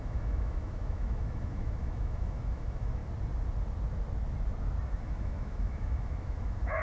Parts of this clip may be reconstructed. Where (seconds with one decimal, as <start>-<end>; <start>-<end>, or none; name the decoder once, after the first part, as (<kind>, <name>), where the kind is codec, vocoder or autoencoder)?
0.0-3.0 (autoencoder, DAC-VAE); 4.9-6.8